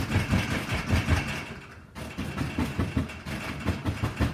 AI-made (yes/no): no